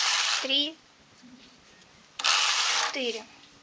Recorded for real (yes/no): no